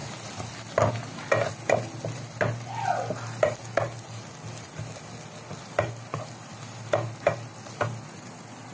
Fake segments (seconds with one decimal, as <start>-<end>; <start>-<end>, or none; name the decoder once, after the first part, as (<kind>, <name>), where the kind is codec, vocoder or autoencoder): none